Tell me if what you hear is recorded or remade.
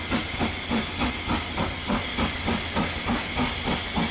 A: recorded